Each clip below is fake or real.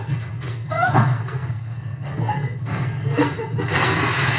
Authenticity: fake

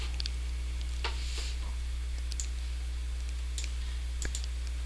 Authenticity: real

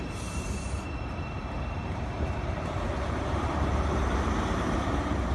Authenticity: fake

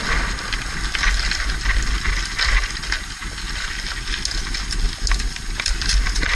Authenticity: real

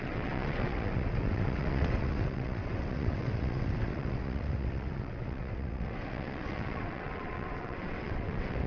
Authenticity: fake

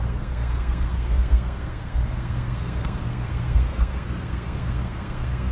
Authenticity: fake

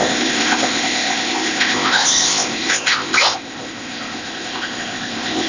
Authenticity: fake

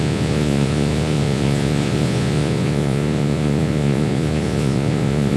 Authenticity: fake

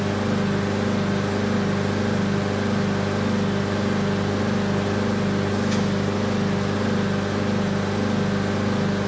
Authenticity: real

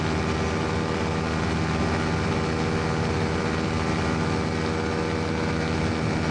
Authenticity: real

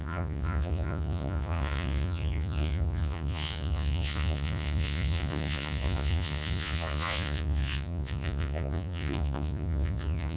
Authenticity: fake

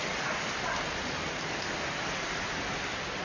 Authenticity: real